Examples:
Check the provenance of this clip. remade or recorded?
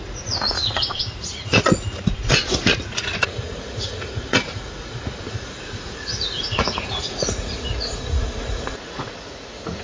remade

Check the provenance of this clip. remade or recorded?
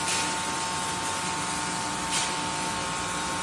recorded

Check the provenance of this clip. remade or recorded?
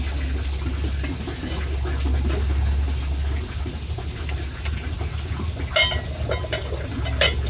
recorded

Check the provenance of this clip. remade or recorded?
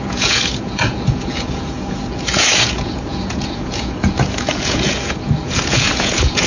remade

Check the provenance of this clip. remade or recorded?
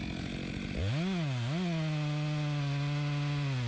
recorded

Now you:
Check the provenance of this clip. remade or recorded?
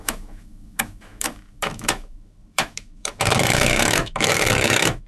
remade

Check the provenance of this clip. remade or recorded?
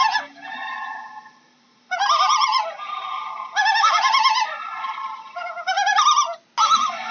recorded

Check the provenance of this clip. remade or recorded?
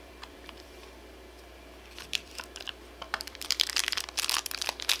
remade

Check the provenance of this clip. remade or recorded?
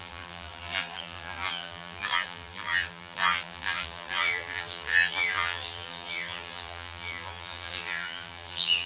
remade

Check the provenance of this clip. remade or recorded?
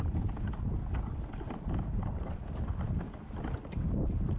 recorded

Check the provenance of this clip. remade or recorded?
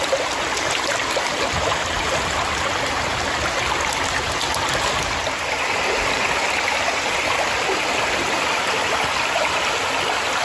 recorded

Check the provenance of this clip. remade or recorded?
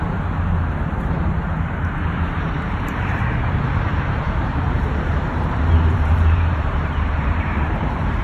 remade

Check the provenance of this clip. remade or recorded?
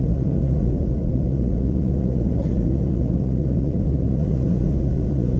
remade